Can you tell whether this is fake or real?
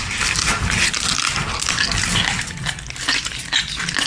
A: real